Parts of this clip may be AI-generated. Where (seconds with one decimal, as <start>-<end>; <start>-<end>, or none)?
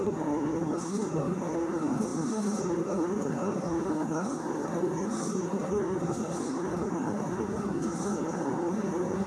0.0-9.3